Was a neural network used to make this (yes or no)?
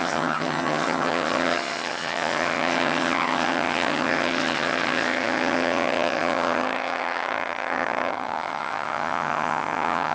yes